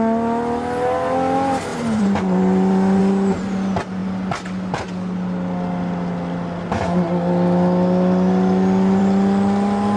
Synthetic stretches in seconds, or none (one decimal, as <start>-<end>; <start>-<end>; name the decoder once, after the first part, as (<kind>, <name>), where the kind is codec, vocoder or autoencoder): 1.7-3.0 (vocoder, BigVGAN v2)